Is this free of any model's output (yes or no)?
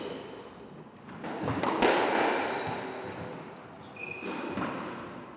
yes